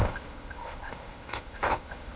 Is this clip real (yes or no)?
no